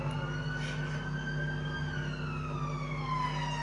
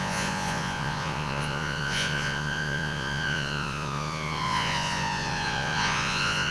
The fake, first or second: second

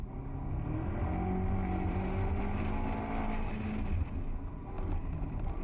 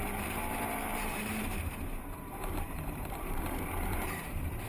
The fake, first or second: second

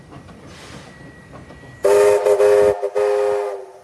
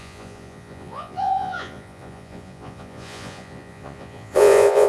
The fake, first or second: second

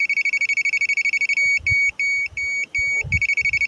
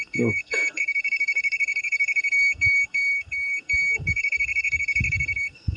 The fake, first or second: second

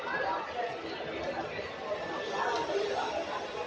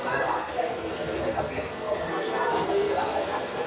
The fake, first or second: second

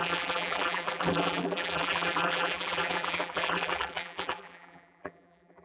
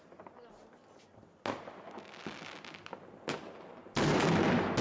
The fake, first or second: first